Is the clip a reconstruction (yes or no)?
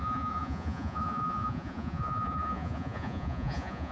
yes